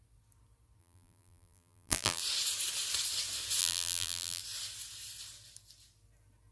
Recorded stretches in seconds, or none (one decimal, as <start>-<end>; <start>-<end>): 0.0-0.8; 2.2-3.6; 4.4-6.5